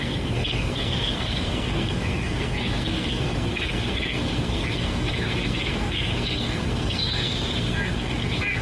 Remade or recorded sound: remade